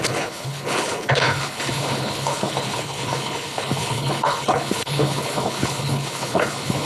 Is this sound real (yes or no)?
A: no